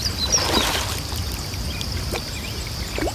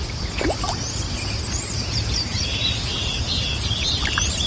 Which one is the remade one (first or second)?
second